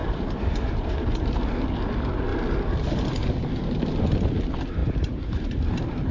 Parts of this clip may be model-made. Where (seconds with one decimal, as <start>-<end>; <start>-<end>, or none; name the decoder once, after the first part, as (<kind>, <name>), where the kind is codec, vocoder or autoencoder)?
0.0-1.3 (vocoder, BigVGAN v2); 4.8-6.1